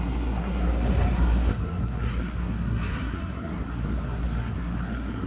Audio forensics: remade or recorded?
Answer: remade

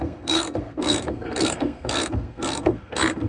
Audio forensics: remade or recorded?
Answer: remade